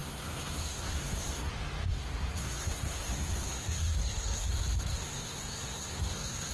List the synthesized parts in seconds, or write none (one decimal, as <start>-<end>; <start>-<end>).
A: 0.0-1.5; 1.9-4.5; 4.9-6.5